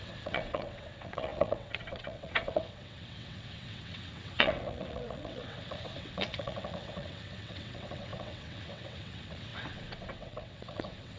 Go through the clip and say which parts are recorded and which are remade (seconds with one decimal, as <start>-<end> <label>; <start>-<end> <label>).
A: 0.0-11.2 remade